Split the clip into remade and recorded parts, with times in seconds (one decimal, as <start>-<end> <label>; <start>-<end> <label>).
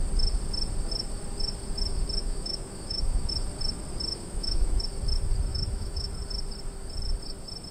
0.0-2.2 recorded; 2.2-3.3 remade; 3.3-4.1 recorded; 4.1-4.8 remade; 4.8-5.5 recorded; 5.5-6.1 remade; 6.1-7.7 recorded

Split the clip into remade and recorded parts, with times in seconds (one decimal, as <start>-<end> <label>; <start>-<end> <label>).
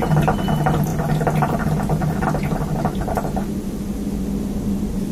0.0-5.1 recorded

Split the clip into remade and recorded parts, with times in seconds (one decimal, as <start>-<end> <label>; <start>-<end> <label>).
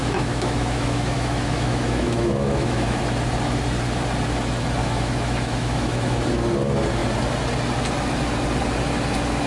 0.0-3.0 remade; 3.0-4.8 recorded; 4.8-6.3 remade; 6.3-9.5 recorded